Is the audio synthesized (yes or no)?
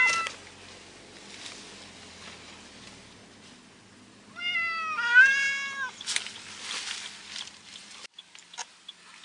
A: no